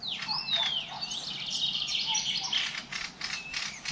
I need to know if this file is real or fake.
real